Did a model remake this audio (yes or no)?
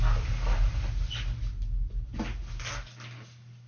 no